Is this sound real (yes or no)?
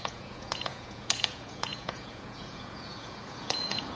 no